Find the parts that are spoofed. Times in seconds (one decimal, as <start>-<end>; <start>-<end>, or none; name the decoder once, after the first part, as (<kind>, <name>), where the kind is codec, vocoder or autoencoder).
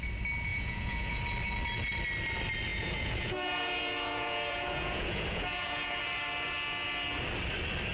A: 0.5-1.2 (vocoder, Vocos); 2.7-6.0